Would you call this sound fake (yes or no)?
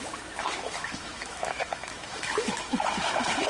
yes